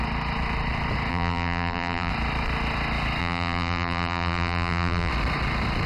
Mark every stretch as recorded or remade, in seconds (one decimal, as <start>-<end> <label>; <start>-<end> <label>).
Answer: 0.0-1.1 recorded; 1.1-2.1 remade; 2.1-3.2 recorded; 3.2-5.1 remade; 5.1-5.9 recorded